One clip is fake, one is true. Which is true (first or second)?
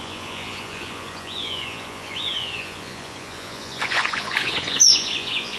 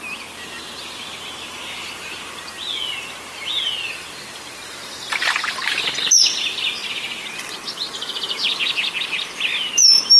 second